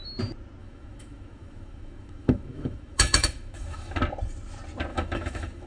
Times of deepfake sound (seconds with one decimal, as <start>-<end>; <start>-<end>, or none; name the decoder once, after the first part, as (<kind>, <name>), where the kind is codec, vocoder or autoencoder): 0.6-4.0 (autoencoder, DAC-VAE); 4.9-5.7